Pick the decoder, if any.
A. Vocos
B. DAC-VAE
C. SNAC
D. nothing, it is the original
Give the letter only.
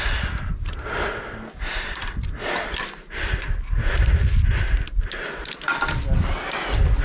D